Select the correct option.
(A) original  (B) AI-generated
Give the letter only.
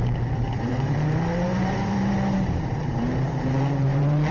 B